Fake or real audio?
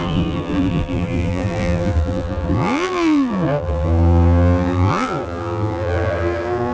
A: fake